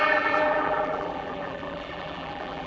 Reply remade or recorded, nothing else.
remade